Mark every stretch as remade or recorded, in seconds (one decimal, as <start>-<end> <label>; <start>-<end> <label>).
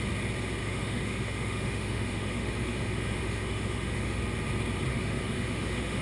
0.0-0.6 recorded; 0.6-4.2 remade; 4.2-4.9 recorded; 4.9-6.0 remade